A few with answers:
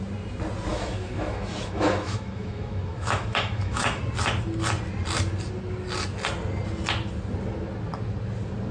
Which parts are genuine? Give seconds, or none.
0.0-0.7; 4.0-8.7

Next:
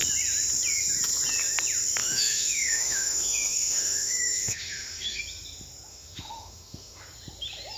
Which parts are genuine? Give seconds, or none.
0.0-2.0; 5.2-5.9; 7.0-7.8

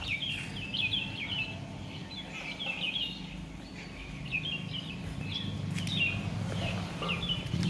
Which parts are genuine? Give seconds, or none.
0.0-7.7

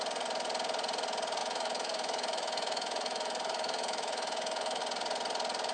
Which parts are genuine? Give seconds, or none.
0.0-1.4; 4.8-5.7